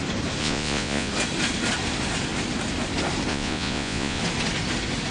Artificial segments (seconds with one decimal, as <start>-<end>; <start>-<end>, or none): 0.4-1.1; 3.3-4.2